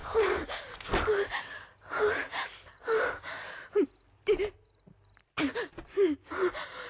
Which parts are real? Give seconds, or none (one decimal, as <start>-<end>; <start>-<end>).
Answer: 0.6-6.9